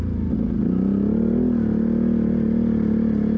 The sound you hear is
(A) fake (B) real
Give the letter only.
B